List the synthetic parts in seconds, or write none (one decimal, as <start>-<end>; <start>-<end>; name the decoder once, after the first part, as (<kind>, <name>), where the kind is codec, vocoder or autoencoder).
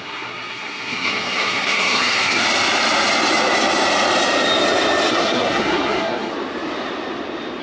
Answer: 0.0-2.4 (codec, SNAC); 5.1-6.3